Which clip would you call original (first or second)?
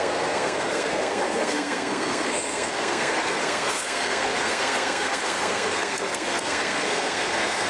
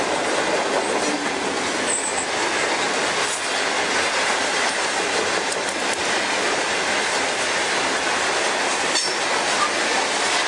second